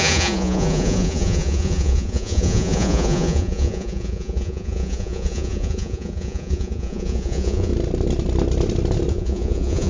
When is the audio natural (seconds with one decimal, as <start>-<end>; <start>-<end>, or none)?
7.7-9.1